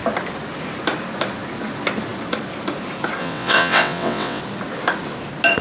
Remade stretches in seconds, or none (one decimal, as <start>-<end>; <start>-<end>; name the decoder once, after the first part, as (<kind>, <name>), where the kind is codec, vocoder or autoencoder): 3.2-4.4 (vocoder, WaveNeXt)